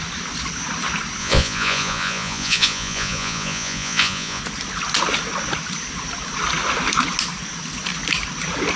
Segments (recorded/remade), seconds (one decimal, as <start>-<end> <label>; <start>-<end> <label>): 0.0-1.2 recorded; 1.2-4.4 remade; 4.4-8.8 recorded